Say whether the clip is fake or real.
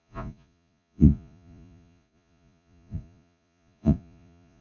fake